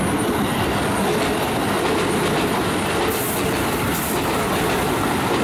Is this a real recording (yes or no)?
yes